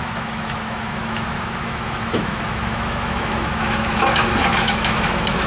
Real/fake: fake